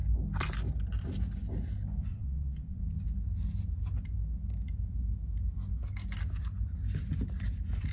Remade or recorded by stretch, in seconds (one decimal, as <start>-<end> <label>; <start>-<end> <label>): 0.0-2.1 recorded; 2.1-2.8 remade; 2.8-7.9 recorded